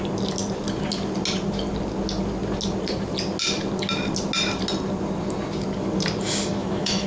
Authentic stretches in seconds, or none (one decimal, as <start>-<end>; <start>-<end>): 0.0-6.6